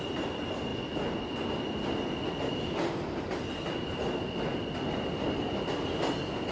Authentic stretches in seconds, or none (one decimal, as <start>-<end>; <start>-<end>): 0.0-6.5

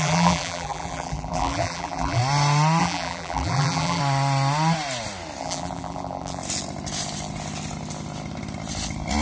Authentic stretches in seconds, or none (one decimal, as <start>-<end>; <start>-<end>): 2.2-2.8; 4.0-5.4; 6.4-9.2

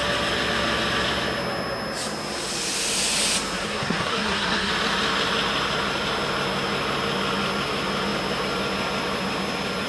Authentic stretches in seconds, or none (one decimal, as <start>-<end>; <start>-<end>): 0.0-3.6; 4.7-9.9